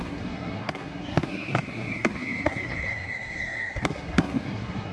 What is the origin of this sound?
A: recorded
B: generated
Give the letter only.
B